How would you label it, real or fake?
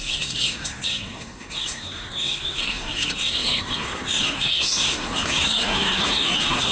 fake